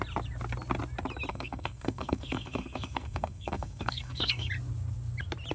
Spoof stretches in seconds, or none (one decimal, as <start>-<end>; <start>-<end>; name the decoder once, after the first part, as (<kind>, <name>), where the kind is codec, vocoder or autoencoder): 1.3-4.5 (codec, SNAC)

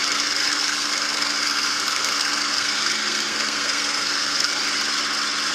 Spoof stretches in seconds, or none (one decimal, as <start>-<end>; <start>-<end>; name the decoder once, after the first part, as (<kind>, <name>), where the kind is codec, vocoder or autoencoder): 0.0-4.6 (codec, SNAC)

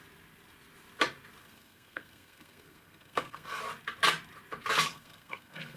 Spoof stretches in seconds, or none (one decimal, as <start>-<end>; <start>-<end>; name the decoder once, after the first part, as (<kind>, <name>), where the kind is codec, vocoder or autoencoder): 1.4-3.6 (codec, SNAC); 4.9-5.8